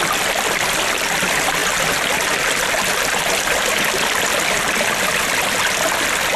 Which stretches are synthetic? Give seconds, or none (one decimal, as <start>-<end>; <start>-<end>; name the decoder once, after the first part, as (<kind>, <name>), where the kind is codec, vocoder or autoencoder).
none